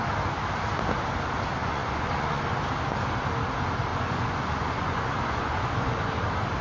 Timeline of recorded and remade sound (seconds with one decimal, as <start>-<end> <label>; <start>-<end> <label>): 0.0-1.6 recorded; 1.6-2.4 remade; 2.4-3.9 recorded; 3.9-6.1 remade; 6.1-6.6 recorded

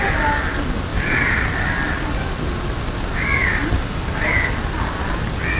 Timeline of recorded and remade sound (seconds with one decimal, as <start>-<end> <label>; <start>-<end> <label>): 0.0-5.6 recorded